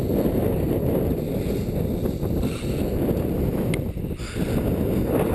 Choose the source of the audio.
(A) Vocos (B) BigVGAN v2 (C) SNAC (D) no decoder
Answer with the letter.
D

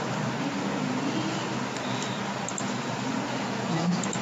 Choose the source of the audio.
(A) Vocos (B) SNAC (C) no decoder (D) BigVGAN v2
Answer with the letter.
C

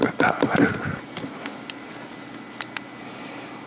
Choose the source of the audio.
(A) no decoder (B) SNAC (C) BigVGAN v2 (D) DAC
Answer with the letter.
A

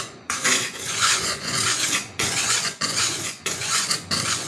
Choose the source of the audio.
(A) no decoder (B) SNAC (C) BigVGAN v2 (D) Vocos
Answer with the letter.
D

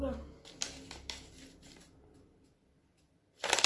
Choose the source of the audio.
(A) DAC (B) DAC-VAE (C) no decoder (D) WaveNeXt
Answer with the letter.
C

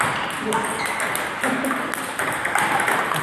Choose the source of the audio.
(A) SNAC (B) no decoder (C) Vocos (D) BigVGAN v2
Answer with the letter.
B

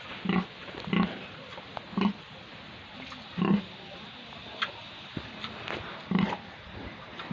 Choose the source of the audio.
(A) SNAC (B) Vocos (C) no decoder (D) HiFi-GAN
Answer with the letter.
C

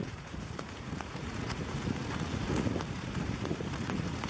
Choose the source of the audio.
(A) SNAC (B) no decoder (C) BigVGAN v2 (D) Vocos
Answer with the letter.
D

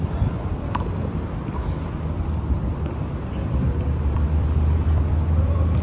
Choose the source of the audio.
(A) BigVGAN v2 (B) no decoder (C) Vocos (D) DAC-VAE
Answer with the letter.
A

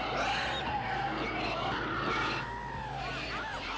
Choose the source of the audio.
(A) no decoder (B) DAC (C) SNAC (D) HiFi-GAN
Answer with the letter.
A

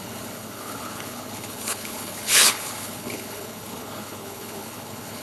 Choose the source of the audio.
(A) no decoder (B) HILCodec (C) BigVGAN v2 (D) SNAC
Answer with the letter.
B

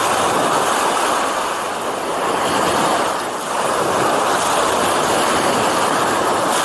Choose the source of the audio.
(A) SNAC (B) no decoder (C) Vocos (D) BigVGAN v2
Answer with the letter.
B